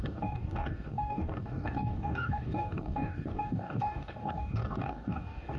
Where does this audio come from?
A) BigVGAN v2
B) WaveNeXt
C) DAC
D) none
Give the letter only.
C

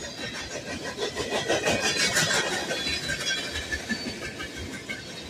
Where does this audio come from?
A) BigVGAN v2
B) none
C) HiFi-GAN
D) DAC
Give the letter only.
B